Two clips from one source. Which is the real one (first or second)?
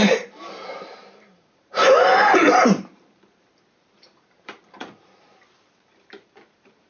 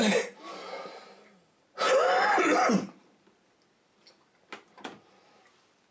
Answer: second